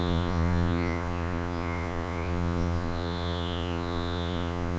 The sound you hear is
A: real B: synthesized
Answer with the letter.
B